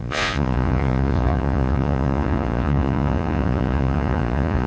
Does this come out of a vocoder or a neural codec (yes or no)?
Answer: yes